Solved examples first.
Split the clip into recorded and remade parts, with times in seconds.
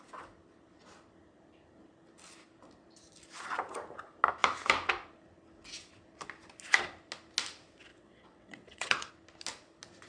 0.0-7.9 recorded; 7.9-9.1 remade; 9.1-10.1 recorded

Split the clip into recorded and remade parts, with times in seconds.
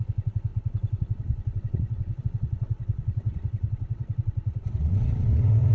0.0-5.7 remade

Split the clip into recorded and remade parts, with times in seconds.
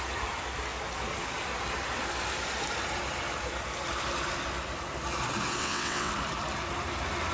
0.0-5.6 recorded; 5.6-6.1 remade; 6.1-7.3 recorded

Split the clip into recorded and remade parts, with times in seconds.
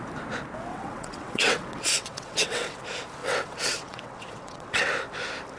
0.0-0.7 recorded; 0.7-2.8 remade; 2.8-3.2 recorded; 3.2-4.9 remade; 4.9-5.6 recorded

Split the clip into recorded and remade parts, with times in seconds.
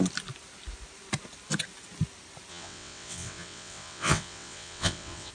0.0-2.5 recorded; 2.5-5.3 remade